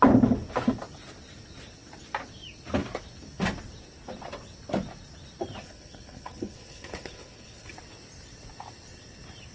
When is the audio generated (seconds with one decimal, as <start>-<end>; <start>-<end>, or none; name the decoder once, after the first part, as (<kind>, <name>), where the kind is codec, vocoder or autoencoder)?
5.6-7.7 (codec, HILCodec)